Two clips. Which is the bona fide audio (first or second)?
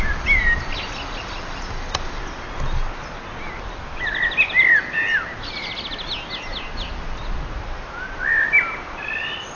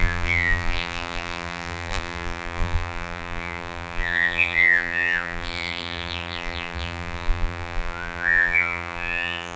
first